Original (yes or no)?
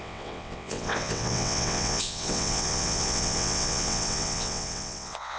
no